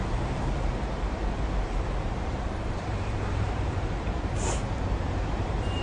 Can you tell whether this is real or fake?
fake